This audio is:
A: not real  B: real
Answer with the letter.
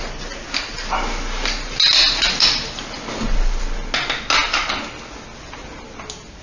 B